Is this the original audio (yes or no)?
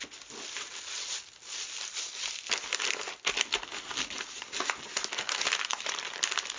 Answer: yes